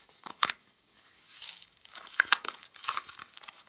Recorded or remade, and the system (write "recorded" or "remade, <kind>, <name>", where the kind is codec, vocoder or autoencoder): remade, codec, DAC